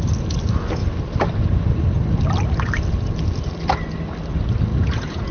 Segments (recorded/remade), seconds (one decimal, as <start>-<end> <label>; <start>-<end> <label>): 0.0-4.7 recorded; 4.7-5.3 remade